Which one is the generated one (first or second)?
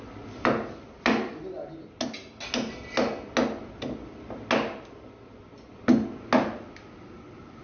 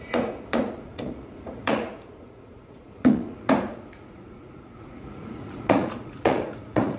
second